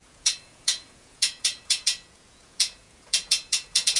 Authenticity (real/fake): fake